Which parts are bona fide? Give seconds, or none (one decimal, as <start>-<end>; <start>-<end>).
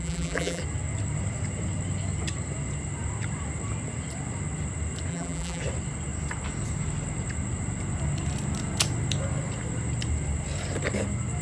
0.6-5.1; 5.6-11.4